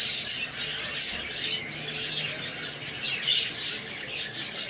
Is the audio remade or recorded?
recorded